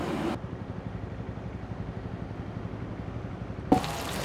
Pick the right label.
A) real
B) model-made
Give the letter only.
A